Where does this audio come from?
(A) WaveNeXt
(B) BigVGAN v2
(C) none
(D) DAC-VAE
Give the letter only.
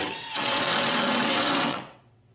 A